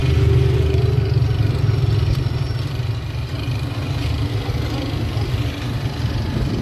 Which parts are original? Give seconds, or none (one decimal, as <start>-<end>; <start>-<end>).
0.0-6.6